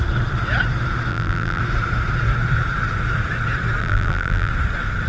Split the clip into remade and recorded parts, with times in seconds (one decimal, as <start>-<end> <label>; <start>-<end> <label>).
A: 0.0-1.1 recorded; 1.1-1.6 remade; 1.6-3.8 recorded; 3.8-4.5 remade; 4.5-5.1 recorded